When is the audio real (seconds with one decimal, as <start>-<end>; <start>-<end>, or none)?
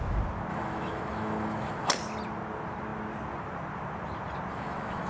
0.0-0.5; 1.9-4.5